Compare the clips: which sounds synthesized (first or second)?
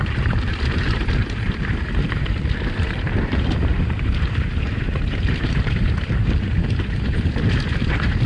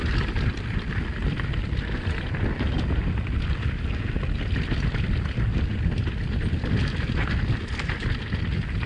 first